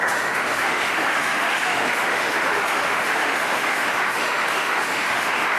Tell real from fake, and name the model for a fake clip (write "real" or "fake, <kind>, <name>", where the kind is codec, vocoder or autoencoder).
fake, autoencoder, DAC-VAE